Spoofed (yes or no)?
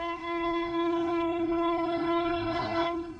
yes